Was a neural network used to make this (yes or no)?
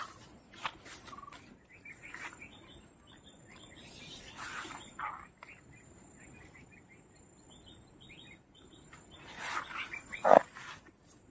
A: no